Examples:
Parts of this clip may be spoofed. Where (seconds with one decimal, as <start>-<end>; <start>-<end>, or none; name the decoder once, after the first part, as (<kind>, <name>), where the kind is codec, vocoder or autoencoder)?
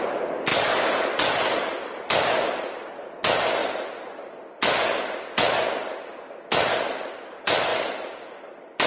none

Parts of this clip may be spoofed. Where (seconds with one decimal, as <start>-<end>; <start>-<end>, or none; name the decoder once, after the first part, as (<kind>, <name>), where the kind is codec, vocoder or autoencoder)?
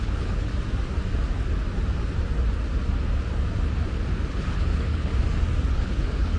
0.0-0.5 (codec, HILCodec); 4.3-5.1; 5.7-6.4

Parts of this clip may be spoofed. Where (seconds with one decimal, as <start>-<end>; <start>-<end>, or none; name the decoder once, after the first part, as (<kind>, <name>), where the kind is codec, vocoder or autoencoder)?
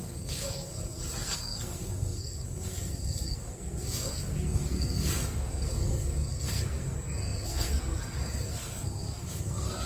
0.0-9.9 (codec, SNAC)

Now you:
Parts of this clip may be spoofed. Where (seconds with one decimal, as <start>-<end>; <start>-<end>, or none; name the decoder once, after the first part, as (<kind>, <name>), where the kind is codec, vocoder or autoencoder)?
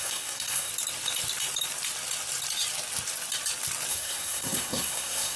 0.0-0.7 (codec, SNAC); 3.9-5.4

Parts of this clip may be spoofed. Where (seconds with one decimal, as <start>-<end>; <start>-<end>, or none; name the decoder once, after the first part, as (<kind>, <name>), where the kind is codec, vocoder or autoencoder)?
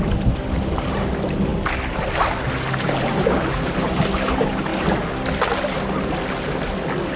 none